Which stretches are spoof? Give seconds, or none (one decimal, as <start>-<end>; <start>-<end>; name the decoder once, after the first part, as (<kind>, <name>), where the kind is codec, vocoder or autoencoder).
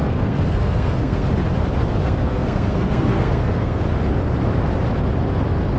0.0-1.3 (codec, SNAC); 2.0-3.8